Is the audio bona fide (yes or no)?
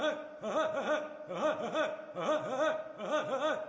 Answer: yes